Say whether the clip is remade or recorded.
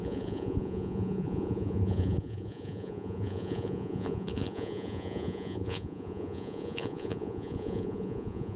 remade